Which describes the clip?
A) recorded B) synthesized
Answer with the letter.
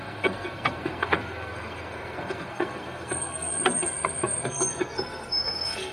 B